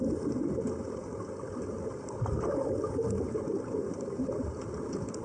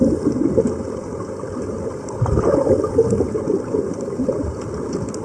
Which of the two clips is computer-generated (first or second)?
second